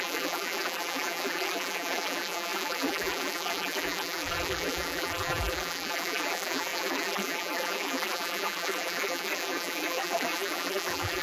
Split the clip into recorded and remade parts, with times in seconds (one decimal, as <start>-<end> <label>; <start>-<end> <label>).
0.0-11.2 remade